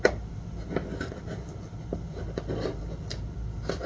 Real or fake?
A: real